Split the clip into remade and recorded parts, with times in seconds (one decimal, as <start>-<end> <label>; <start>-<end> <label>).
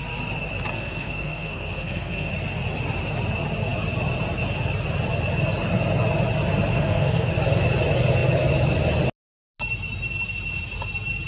0.0-0.7 recorded; 0.7-2.3 remade; 2.3-6.7 recorded; 6.7-7.3 remade; 7.3-11.3 recorded